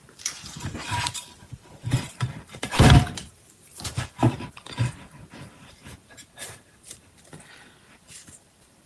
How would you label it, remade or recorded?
remade